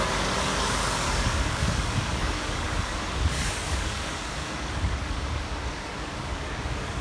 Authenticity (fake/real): fake